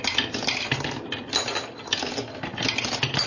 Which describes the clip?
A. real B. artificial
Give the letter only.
A